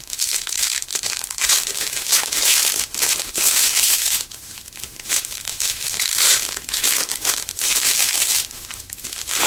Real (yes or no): no